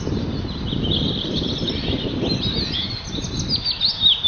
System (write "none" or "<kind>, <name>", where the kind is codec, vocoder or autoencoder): none